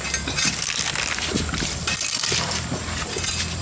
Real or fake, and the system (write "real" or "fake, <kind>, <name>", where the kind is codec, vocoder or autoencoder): real